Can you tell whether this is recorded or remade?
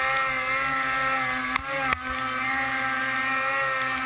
recorded